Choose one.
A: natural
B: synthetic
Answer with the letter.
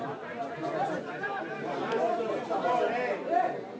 A